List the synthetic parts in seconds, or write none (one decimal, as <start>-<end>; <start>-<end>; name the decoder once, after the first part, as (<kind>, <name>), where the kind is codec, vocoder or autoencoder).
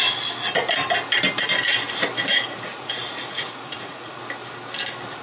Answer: 2.3-4.2 (vocoder, Vocos)